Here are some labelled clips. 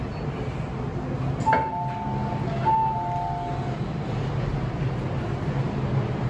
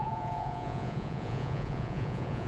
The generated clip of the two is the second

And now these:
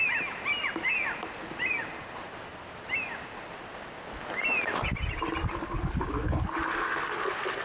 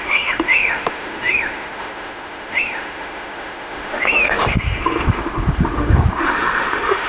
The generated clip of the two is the second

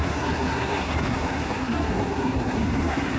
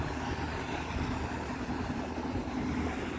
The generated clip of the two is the first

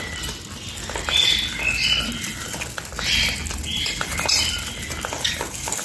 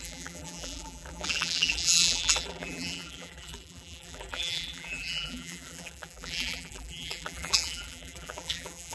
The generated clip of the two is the second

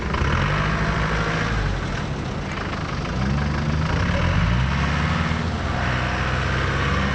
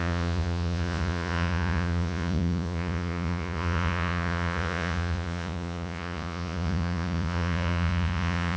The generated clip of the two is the second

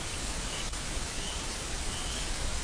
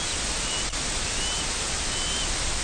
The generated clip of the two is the first